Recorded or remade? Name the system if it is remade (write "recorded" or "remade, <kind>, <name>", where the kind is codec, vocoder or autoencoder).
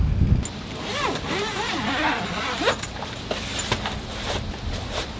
recorded